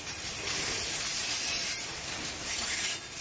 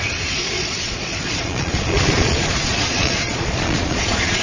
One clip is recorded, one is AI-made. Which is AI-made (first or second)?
second